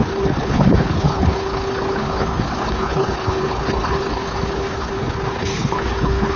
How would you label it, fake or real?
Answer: fake